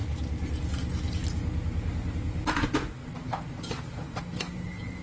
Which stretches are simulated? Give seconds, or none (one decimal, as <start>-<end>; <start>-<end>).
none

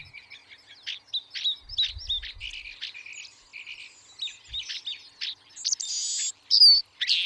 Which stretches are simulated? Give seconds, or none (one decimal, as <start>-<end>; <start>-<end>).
none

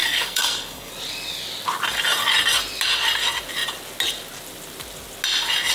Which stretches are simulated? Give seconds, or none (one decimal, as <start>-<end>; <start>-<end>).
0.0-0.9

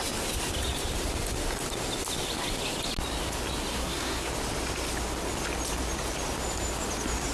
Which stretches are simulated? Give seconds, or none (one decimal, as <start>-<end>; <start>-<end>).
3.7-4.3

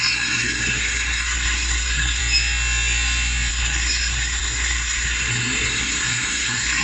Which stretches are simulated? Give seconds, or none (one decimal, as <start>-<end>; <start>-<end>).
0.0-2.2; 3.5-6.8

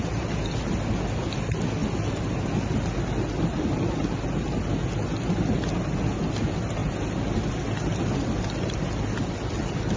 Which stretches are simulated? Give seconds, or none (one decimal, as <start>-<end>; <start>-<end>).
none

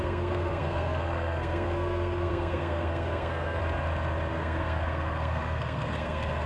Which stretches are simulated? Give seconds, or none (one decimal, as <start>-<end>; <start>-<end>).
0.0-3.6; 4.3-6.5

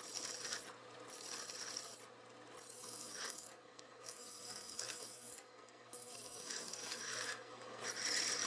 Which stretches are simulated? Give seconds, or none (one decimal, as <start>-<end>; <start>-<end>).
2.7-7.8